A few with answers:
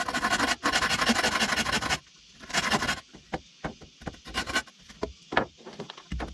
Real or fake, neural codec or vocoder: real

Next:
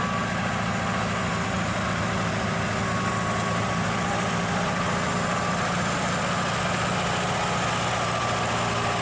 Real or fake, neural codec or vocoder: real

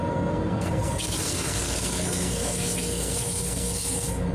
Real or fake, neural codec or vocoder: fake, codec, SNAC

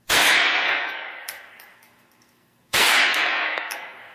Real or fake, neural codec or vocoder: fake, codec, SNAC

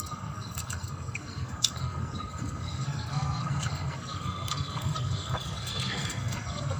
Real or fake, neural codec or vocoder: fake, codec, SNAC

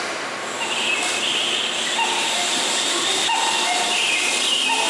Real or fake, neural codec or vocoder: real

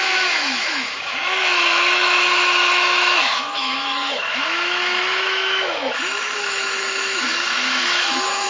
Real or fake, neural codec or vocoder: fake, autoencoder, DAC-VAE